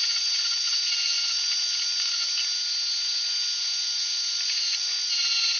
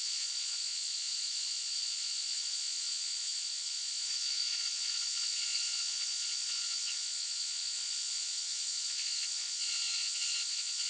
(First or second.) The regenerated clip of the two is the second